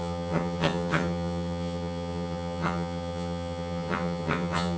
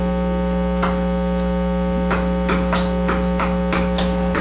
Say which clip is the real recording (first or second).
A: second